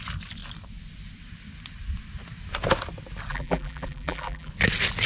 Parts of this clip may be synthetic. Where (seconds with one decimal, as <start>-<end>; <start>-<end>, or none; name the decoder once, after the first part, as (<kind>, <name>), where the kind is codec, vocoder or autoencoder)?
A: 3.3-4.5 (vocoder, BigVGAN v2)